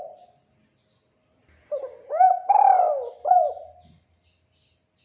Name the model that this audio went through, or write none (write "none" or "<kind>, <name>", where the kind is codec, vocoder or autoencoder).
none